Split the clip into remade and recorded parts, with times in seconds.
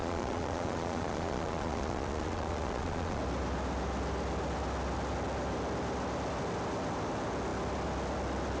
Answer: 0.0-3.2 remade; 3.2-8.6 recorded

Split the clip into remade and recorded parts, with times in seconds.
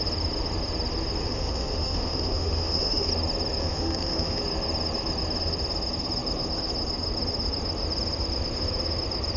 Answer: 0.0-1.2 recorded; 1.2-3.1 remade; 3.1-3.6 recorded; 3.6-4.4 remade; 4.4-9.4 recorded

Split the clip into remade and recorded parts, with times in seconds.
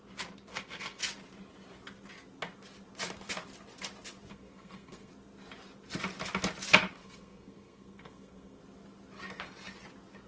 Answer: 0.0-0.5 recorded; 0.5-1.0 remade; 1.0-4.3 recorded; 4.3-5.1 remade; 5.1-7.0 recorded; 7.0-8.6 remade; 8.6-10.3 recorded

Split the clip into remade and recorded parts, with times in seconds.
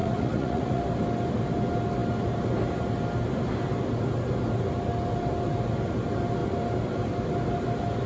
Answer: 0.0-0.8 remade; 0.8-8.1 recorded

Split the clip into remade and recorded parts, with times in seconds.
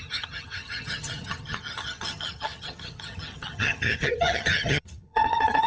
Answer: 0.0-5.7 remade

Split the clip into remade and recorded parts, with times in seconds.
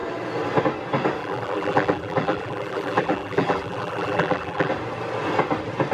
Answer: 0.0-1.2 recorded; 1.2-4.7 remade; 4.7-5.9 recorded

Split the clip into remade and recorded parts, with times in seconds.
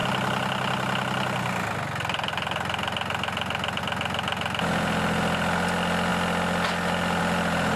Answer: 0.0-7.8 recorded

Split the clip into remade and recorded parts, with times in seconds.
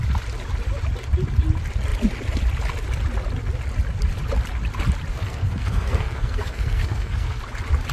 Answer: 0.0-5.1 recorded; 5.1-7.4 remade; 7.4-7.9 recorded